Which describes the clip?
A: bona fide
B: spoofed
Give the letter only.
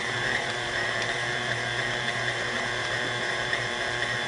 B